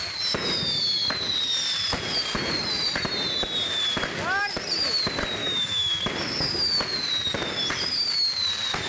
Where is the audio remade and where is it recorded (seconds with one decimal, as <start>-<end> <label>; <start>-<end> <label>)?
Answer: 0.0-5.4 recorded; 5.4-6.0 remade; 6.0-8.9 recorded